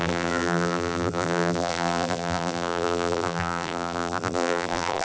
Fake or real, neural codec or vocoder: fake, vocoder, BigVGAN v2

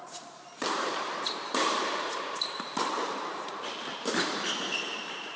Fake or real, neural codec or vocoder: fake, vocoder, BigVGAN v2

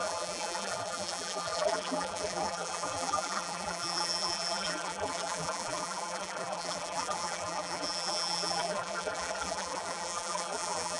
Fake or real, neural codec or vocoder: fake, vocoder, BigVGAN v2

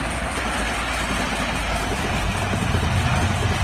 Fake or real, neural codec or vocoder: real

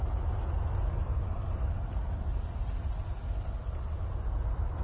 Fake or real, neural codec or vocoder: real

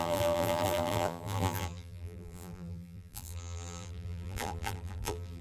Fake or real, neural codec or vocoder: fake, vocoder, BigVGAN v2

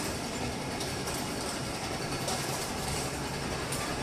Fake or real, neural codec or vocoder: fake, vocoder, BigVGAN v2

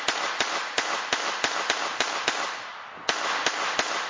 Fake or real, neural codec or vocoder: fake, vocoder, BigVGAN v2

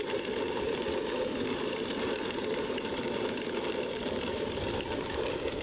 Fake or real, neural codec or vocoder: fake, vocoder, BigVGAN v2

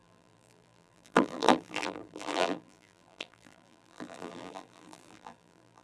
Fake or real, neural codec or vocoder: fake, vocoder, BigVGAN v2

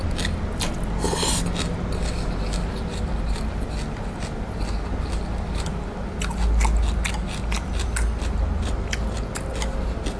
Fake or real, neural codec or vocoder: real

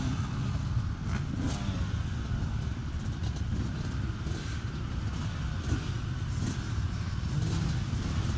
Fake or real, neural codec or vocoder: fake, vocoder, BigVGAN v2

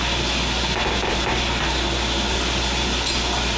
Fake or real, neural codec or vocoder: real